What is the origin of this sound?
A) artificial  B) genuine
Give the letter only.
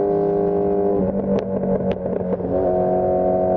B